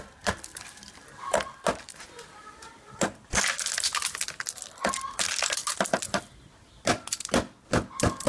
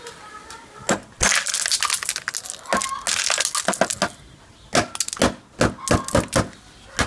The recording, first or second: second